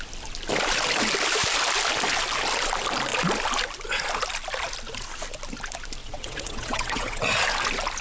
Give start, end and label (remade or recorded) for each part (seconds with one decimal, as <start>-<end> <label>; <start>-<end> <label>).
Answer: 0.0-6.0 recorded; 6.0-7.3 remade; 7.3-8.0 recorded